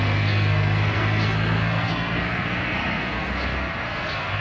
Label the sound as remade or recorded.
remade